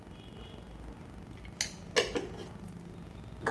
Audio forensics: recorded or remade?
recorded